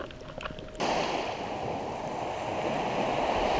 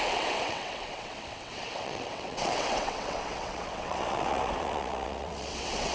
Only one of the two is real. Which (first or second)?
first